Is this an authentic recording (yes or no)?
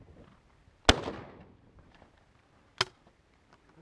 yes